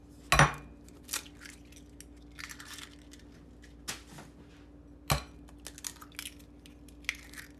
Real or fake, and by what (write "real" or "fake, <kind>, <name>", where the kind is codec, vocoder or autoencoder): real